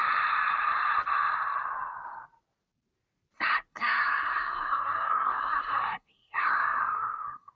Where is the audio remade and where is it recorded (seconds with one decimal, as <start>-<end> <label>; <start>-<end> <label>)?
0.0-3.7 recorded; 3.7-7.5 remade